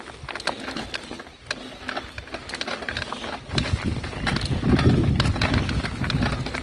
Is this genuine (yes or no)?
yes